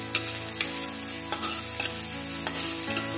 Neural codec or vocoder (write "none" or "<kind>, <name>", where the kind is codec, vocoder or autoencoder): none